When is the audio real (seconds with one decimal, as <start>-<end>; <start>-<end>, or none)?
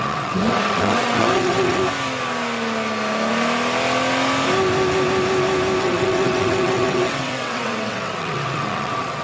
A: 1.8-5.8